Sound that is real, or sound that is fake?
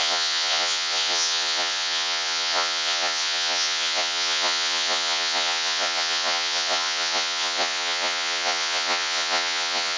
fake